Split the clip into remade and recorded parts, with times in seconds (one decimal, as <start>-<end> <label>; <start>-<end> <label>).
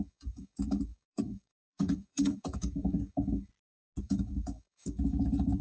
0.0-3.5 remade; 3.5-4.0 recorded; 4.0-5.6 remade